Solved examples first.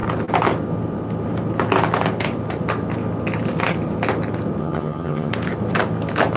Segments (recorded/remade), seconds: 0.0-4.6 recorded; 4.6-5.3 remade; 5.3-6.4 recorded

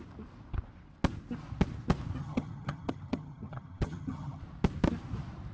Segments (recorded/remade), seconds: 0.0-2.2 recorded; 2.2-4.4 remade; 4.4-5.5 recorded